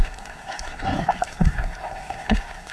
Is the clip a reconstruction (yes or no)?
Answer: yes